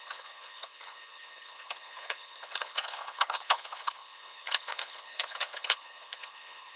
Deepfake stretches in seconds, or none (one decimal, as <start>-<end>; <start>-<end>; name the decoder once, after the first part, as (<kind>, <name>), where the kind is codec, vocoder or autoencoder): 0.0-6.8 (codec, HILCodec)